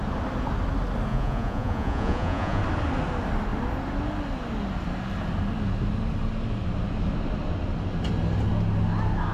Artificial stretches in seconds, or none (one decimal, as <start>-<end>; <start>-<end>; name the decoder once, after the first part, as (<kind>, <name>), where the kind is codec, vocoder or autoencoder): 1.1-2.6 (vocoder, Vocos)